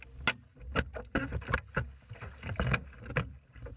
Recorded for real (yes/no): yes